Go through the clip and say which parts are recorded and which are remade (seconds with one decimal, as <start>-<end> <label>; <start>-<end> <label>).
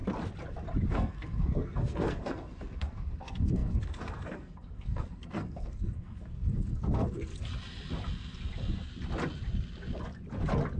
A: 0.0-0.9 recorded; 0.9-7.3 remade; 7.3-10.8 recorded